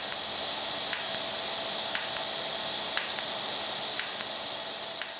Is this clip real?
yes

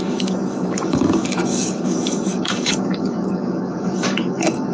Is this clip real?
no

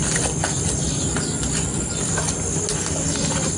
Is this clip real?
yes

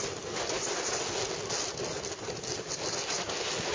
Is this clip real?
yes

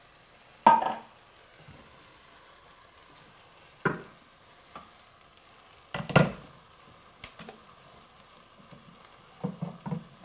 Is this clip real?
yes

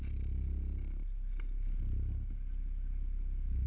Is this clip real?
yes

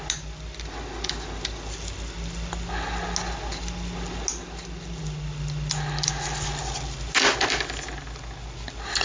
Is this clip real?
yes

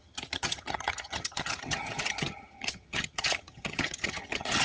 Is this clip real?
no